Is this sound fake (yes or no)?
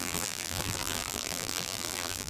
yes